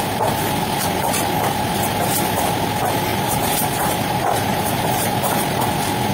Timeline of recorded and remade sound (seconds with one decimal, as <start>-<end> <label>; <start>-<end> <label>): 0.0-3.1 recorded; 3.1-5.3 remade; 5.3-6.1 recorded